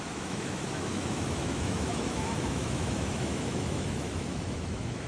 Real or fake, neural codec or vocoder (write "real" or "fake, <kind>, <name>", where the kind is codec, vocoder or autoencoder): fake, autoencoder, DAC-VAE